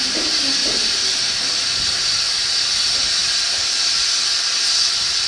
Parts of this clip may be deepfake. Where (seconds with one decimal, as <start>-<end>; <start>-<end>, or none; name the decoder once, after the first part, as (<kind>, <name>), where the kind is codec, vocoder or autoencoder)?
none